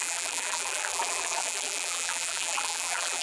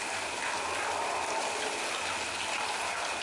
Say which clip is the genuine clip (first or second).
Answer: second